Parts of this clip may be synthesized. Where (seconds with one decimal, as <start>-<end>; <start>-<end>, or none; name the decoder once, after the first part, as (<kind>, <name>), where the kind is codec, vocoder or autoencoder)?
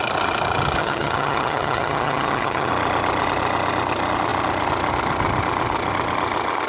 0.8-2.7 (vocoder, HiFi-GAN)